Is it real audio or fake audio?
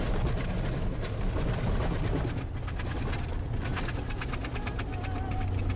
real